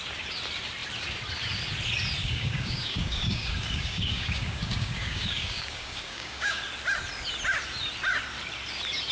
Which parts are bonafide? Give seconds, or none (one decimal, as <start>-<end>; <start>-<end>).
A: 0.0-2.2; 6.6-9.1